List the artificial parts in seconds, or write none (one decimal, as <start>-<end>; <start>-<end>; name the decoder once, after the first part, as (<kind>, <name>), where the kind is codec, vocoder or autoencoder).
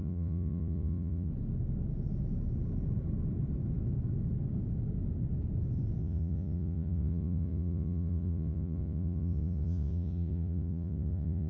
0.0-1.3 (vocoder, Vocos); 6.0-11.5